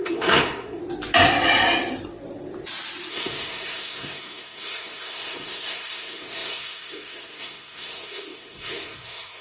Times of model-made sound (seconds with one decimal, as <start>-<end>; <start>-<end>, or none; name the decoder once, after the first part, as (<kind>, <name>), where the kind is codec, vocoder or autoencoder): 0.0-0.8 (codec, SNAC); 3.1-9.4